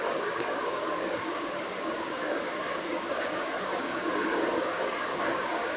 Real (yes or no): no